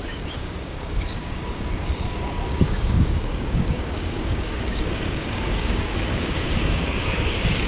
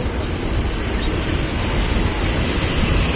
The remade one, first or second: first